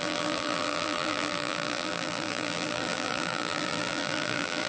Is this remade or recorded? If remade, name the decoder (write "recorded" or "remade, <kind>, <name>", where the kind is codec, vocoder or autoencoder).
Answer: remade, vocoder, BigVGAN v2